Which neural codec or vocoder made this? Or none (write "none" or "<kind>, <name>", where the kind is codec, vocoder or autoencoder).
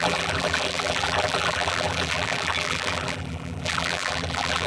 vocoder, BigVGAN v2